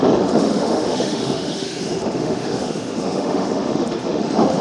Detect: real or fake fake